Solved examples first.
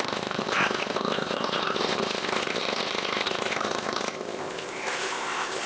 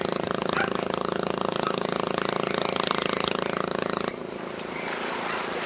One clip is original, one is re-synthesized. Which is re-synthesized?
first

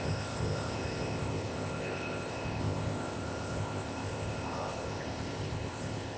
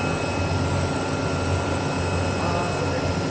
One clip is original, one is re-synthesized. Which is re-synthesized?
first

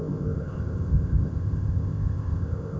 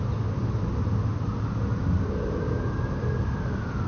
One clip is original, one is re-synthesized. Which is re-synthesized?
first